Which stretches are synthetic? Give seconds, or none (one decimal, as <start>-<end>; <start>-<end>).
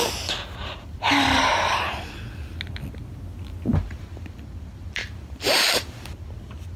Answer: 0.6-1.9; 5.0-5.7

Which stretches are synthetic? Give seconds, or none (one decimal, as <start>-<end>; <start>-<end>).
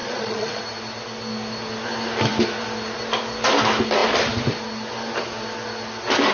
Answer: 0.0-0.6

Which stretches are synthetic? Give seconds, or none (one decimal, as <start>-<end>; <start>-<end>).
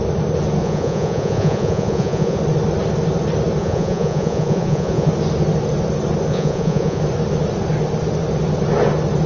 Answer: 0.6-2.4; 3.6-5.1; 6.3-7.0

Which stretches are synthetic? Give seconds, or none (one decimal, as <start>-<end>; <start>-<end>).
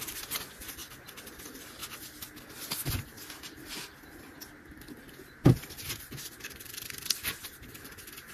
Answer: 0.0-1.8; 5.8-8.3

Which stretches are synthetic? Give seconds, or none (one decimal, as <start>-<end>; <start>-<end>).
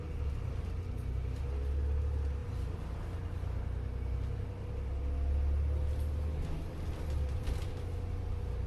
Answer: none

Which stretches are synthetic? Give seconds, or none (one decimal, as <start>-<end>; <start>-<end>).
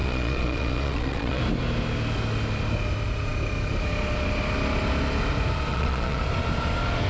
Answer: 0.0-1.4; 5.7-6.2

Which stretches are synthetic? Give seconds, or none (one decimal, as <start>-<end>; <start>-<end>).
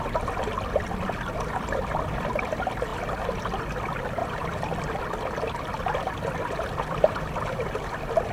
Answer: none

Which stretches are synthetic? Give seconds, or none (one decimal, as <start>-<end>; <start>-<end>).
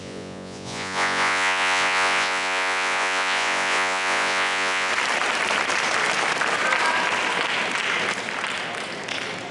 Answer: 0.0-4.9